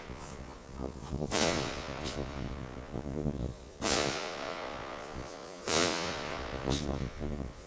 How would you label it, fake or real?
fake